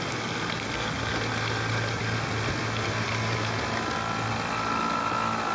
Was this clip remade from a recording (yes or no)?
no